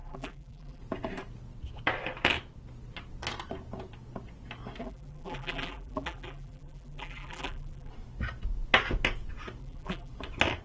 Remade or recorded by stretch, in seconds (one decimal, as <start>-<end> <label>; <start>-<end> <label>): 0.0-0.8 remade; 0.8-4.8 recorded; 4.8-7.9 remade; 7.9-9.6 recorded; 9.6-10.1 remade; 10.1-10.6 recorded